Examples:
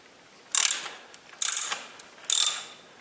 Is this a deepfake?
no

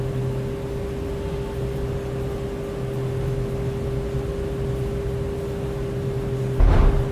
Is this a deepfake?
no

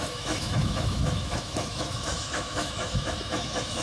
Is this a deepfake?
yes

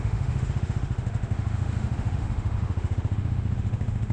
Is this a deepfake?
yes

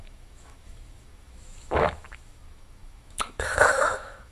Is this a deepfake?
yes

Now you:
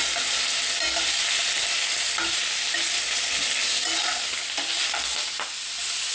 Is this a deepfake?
no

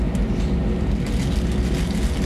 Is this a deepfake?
no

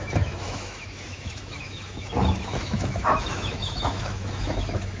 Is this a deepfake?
yes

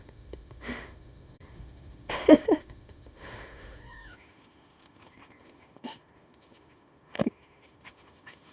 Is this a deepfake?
yes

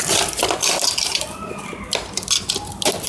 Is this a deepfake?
no